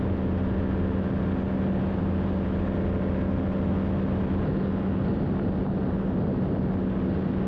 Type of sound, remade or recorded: recorded